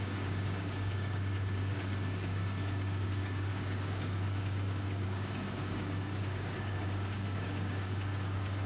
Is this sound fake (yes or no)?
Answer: yes